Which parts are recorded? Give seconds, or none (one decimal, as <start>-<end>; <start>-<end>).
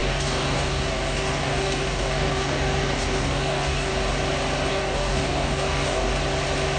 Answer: 3.9-4.7; 6.1-6.8